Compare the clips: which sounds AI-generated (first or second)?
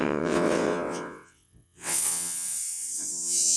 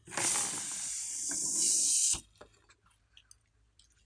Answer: first